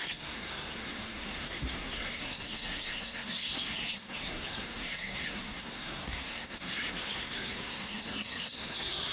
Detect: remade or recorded remade